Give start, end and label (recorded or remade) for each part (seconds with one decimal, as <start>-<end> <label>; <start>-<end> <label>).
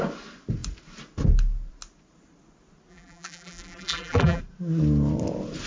0.0-2.9 recorded; 2.9-4.4 remade; 4.4-5.7 recorded